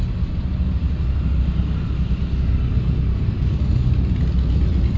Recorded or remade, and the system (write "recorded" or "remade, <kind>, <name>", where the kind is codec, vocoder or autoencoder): recorded